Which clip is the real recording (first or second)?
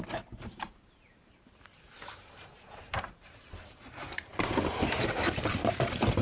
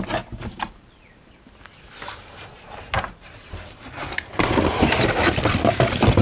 second